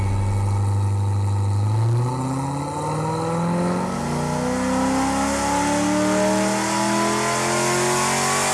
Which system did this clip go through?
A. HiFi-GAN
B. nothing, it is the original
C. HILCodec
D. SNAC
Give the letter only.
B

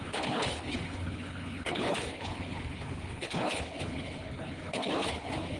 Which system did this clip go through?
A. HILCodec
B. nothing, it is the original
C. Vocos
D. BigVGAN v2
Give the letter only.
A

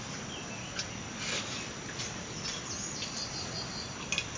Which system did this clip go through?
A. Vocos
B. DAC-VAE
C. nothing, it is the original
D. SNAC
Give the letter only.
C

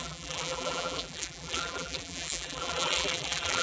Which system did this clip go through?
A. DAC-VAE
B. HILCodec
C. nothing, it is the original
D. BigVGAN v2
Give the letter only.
D